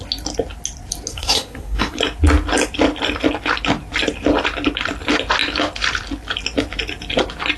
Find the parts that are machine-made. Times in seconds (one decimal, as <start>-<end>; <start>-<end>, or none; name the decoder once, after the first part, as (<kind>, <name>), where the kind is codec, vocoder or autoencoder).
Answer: 1.1-2.0 (codec, SNAC)